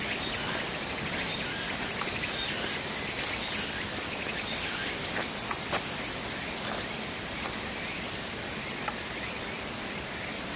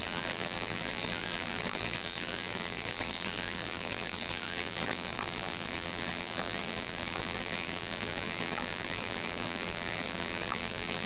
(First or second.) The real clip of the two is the first